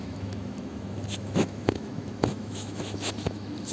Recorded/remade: remade